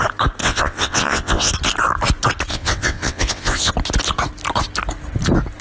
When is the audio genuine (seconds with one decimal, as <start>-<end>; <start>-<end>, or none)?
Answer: 0.0-0.4; 1.5-2.5; 3.7-5.6

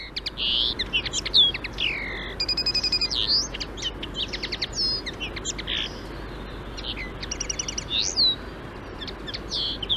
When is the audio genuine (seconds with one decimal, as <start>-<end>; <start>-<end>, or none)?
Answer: 0.0-10.0